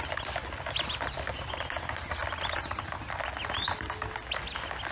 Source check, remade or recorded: recorded